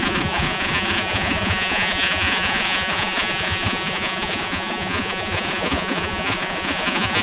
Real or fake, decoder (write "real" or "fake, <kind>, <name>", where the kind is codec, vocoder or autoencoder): fake, vocoder, Vocos